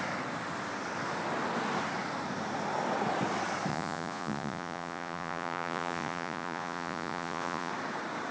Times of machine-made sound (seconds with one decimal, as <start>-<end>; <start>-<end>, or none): 3.7-7.7